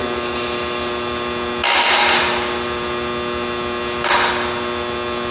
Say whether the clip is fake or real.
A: real